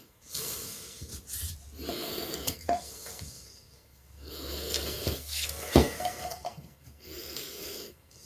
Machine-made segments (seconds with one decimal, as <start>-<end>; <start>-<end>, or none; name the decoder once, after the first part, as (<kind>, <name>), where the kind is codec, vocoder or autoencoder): 0.0-1.1 (codec, SNAC); 1.9-8.3